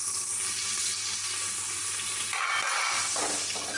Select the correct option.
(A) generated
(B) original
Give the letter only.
B